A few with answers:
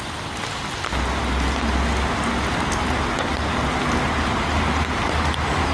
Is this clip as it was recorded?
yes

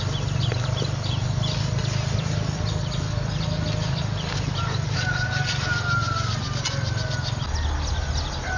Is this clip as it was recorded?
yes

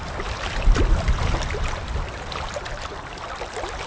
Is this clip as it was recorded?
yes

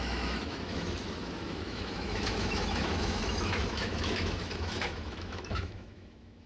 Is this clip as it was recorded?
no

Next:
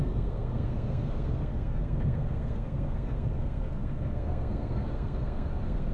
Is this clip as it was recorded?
no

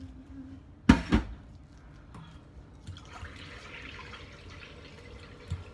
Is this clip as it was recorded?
yes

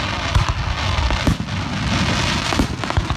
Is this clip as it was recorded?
yes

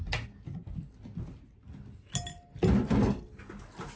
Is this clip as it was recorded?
yes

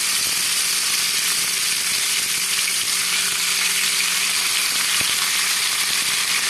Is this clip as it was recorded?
yes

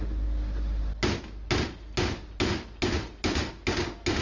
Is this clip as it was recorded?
yes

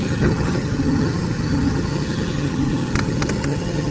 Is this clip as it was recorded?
no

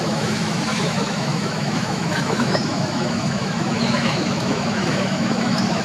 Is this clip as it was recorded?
no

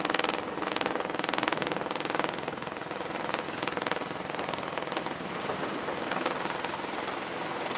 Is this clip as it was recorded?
yes